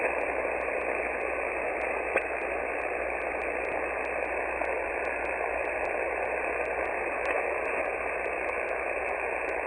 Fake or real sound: real